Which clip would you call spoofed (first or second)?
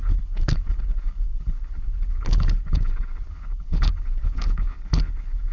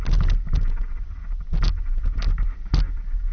first